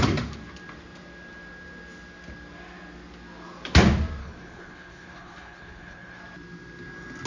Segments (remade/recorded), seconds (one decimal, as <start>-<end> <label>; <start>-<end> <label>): 0.0-4.2 recorded; 4.2-6.2 remade; 6.2-7.3 recorded

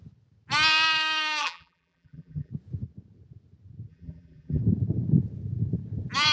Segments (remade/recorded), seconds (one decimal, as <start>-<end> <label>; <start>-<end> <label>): 0.0-1.4 recorded; 1.4-2.5 remade; 2.5-3.9 recorded; 3.9-4.6 remade; 4.6-6.3 recorded

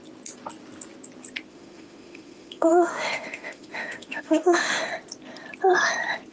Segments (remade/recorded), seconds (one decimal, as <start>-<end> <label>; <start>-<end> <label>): 0.0-1.5 recorded; 1.5-4.9 remade; 4.9-6.3 recorded